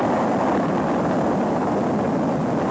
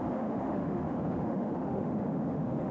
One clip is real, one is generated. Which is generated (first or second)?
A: second